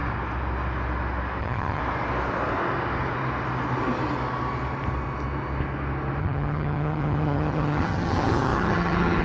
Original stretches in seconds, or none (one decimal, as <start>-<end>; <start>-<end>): 0.0-1.4; 1.8-6.2